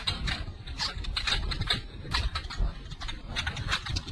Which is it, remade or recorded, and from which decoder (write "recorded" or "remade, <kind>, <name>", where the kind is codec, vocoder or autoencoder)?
remade, vocoder, BigVGAN v2